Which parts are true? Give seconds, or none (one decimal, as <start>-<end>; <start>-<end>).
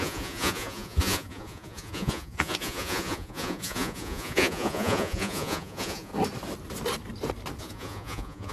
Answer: 6.1-7.6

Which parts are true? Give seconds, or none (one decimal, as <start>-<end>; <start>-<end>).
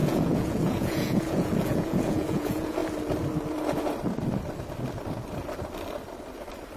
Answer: 2.8-6.8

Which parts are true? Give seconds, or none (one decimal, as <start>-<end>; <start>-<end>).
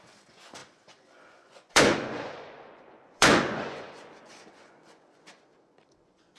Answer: none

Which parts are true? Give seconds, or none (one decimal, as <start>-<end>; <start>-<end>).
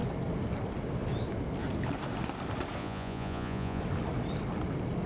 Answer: 0.0-2.8; 3.8-5.1